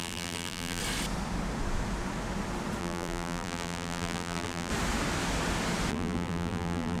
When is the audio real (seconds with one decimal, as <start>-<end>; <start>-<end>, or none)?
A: 0.8-2.8; 4.7-5.9